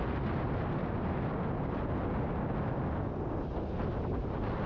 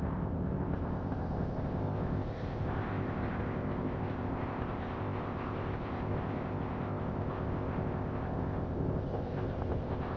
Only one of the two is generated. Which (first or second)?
second